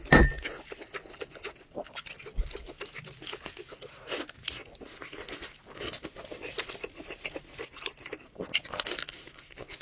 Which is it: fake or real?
real